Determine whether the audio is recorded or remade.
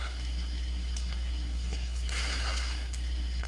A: remade